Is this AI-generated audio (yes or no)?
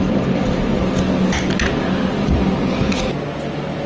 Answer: no